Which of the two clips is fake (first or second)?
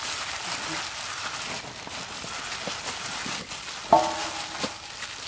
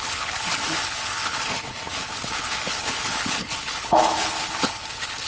second